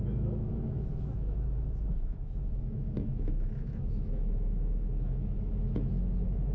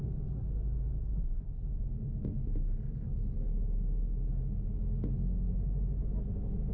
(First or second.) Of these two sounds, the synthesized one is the first